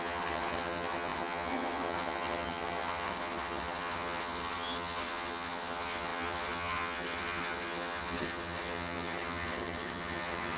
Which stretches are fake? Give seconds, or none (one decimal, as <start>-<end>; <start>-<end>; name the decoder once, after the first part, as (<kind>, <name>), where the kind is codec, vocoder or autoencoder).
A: 0.0-10.6 (vocoder, HiFi-GAN)